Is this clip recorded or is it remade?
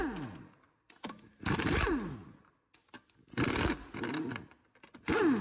recorded